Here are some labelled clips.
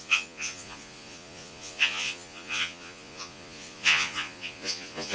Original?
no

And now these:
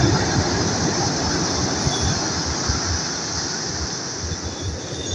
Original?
yes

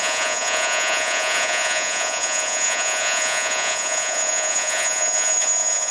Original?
no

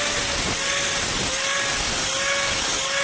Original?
yes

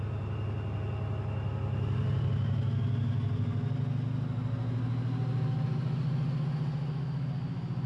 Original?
yes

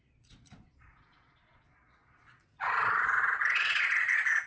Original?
no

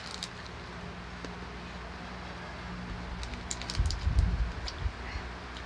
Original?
yes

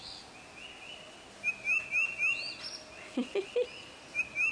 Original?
yes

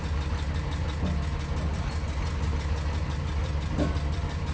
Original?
yes